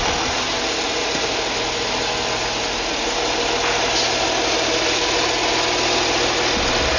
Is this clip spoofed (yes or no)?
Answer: no